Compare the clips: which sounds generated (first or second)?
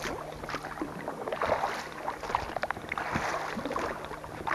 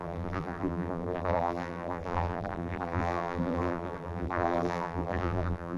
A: second